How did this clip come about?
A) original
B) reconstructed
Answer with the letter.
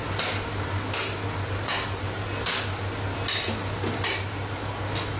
A